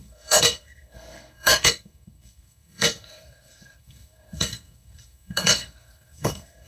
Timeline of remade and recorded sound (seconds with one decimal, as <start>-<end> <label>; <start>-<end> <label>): 0.0-6.7 remade